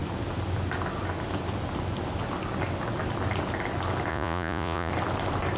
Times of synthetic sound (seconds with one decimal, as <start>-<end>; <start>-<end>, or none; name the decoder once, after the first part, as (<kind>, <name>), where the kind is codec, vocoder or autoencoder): 4.1-4.9 (vocoder, Vocos)